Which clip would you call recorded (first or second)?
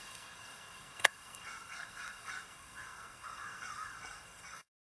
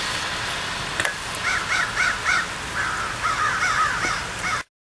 second